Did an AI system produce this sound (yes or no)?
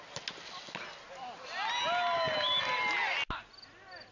no